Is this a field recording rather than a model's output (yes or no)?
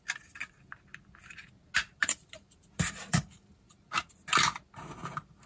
yes